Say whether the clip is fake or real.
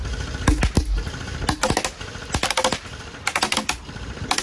real